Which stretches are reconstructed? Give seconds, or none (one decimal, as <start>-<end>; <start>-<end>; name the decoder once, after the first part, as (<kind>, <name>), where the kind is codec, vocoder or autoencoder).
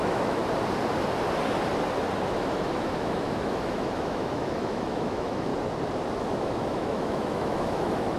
0.0-0.4 (autoencoder, DAC-VAE); 2.2-5.5; 6.1-8.2